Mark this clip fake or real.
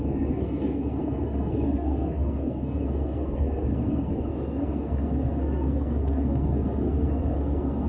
fake